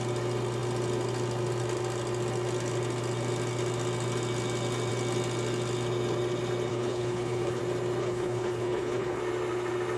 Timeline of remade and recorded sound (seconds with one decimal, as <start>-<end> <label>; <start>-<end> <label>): 0.0-6.7 recorded; 6.7-7.6 remade; 7.6-8.0 recorded; 8.0-9.2 remade; 9.2-10.0 recorded